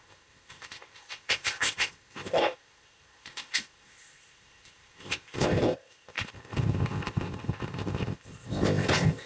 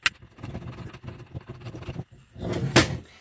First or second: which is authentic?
second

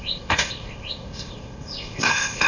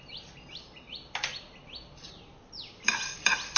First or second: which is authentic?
second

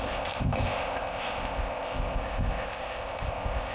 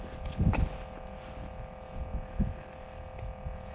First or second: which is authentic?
second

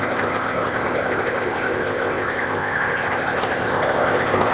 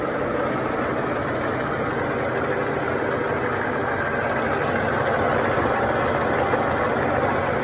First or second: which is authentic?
second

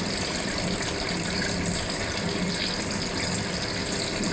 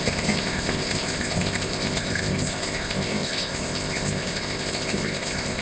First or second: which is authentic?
first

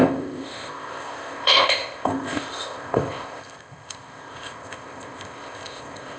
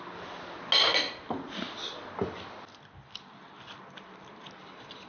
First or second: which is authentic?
second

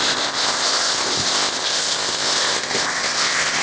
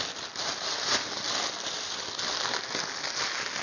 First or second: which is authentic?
second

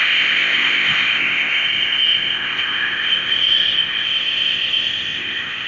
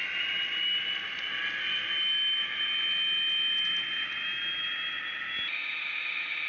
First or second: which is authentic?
second